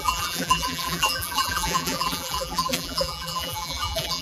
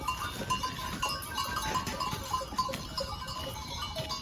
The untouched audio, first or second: second